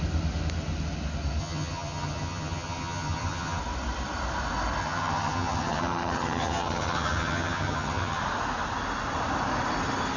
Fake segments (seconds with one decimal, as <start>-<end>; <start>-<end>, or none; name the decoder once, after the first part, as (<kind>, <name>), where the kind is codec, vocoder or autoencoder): 1.4-3.6 (vocoder, HiFi-GAN); 4.8-8.2